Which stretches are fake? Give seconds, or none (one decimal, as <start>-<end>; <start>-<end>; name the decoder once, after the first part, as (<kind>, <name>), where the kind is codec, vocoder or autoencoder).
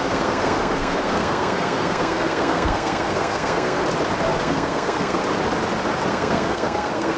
0.0-3.8 (codec, SNAC); 4.4-5.2; 6.1-7.2